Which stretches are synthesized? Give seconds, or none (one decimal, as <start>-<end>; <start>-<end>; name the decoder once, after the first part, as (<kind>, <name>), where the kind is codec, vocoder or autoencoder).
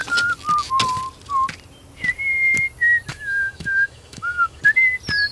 3.1-4.6 (autoencoder, DAC-VAE)